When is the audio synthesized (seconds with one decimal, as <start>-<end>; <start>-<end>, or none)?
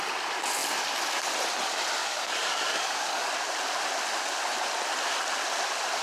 2.0-3.3